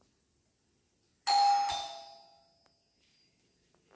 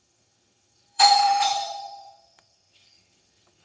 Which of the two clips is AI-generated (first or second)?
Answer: second